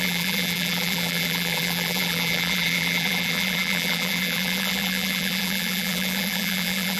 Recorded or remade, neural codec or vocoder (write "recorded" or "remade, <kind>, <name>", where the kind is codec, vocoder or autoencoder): remade, vocoder, BigVGAN v2